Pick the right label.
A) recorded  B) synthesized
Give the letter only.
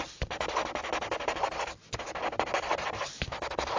A